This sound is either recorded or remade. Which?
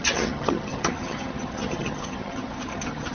remade